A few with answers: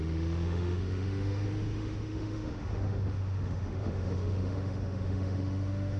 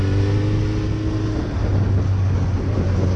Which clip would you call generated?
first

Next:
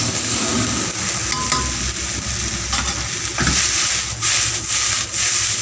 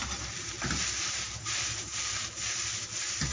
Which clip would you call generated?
second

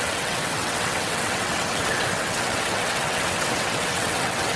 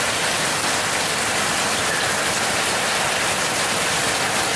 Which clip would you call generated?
first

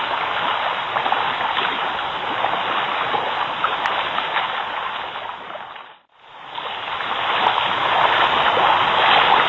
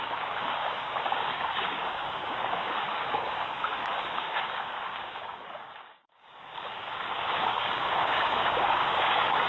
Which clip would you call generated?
second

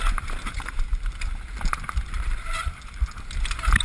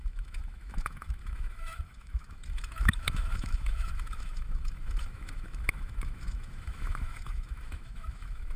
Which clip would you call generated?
second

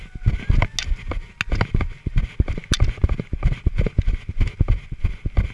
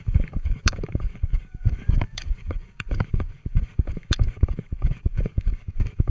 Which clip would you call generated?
second